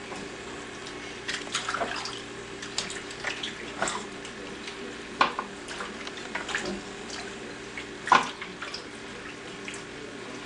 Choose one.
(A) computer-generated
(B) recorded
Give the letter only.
B